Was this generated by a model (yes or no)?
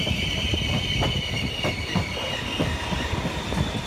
no